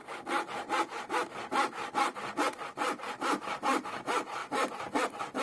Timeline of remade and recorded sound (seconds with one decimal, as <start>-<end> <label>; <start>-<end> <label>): 0.0-5.4 recorded

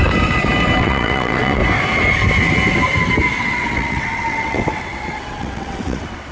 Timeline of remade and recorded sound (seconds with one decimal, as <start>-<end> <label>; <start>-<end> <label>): 0.0-0.8 recorded; 0.8-1.6 remade; 1.6-3.4 recorded; 3.4-6.3 remade